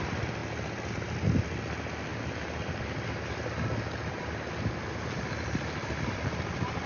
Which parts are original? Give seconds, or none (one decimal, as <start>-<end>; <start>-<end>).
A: 0.0-6.9